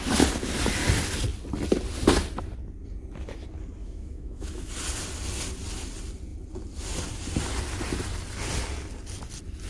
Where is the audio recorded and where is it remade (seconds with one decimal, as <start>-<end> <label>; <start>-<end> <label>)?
0.0-3.8 recorded; 3.8-4.7 remade; 4.7-9.7 recorded

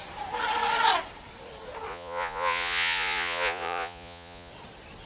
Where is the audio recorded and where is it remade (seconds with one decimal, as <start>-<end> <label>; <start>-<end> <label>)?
0.0-1.9 recorded; 1.9-4.5 remade; 4.5-5.1 recorded

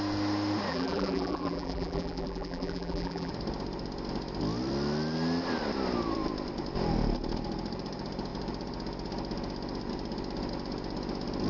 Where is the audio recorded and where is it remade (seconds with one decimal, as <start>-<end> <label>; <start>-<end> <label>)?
0.0-0.7 recorded; 0.7-3.3 remade; 3.3-11.5 recorded

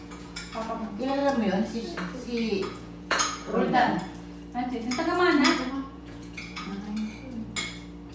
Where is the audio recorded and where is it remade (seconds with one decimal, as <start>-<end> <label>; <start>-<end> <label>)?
0.0-1.2 remade; 1.2-2.5 recorded; 2.5-3.5 remade; 3.5-5.7 recorded; 5.7-6.7 remade; 6.7-8.1 recorded

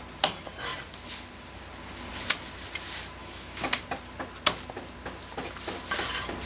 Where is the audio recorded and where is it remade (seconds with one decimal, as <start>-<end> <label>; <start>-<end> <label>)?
0.0-3.2 recorded; 3.2-3.7 remade; 3.7-6.5 recorded

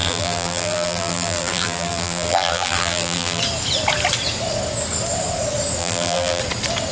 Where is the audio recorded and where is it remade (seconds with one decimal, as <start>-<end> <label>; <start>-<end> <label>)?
0.0-3.4 remade; 3.4-5.8 recorded; 5.8-6.4 remade; 6.4-6.9 recorded

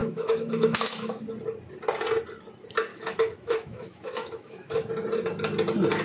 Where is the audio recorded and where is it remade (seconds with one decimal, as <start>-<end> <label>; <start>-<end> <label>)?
0.0-1.2 remade; 1.2-2.9 recorded; 2.9-4.9 remade; 4.9-6.0 recorded

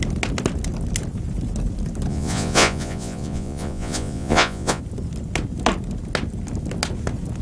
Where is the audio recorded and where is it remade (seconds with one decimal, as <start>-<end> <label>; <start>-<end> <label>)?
0.0-2.1 recorded; 2.1-4.8 remade; 4.8-7.4 recorded